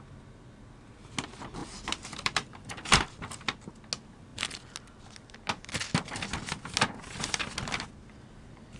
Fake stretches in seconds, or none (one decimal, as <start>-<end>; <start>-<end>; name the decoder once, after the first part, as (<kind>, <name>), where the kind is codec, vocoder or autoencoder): 1.6-3.7 (vocoder, BigVGAN v2)